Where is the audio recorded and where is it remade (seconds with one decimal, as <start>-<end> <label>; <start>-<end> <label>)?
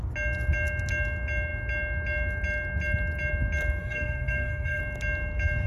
0.0-3.8 recorded; 3.8-4.8 remade; 4.8-5.7 recorded